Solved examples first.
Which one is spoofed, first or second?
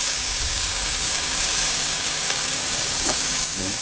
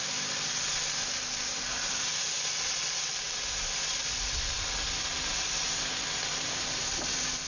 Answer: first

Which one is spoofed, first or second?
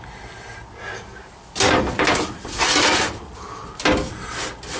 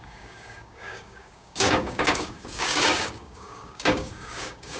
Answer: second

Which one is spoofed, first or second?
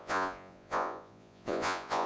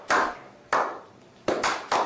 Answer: first